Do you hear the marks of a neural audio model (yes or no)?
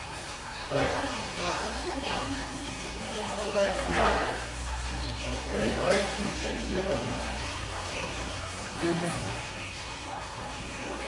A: yes